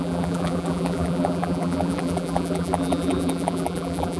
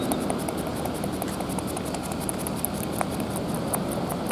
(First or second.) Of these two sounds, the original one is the second